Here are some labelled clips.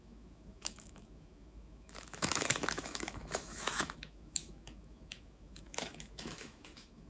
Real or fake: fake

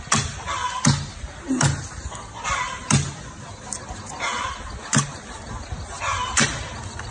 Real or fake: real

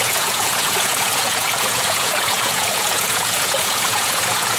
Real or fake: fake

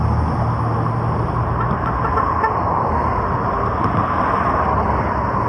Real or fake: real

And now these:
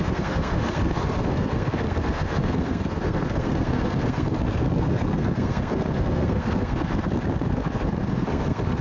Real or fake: fake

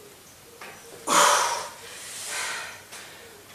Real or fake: fake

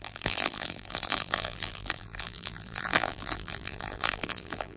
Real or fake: fake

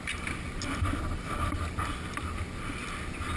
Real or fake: real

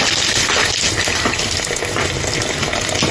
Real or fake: real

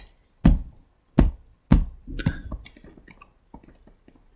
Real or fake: real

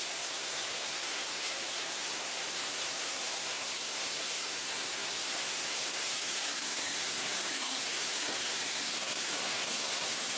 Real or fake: fake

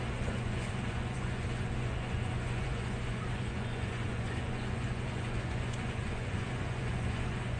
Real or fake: fake